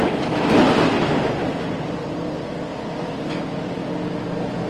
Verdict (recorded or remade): recorded